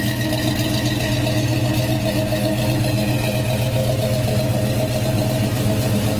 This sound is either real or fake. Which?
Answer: real